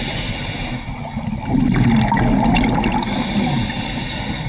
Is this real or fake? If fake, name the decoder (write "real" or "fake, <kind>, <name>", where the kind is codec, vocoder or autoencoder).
real